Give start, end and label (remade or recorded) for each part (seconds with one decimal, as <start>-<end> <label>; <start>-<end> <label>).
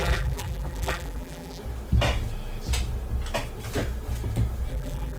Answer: 0.0-1.6 remade; 1.6-4.7 recorded; 4.7-5.2 remade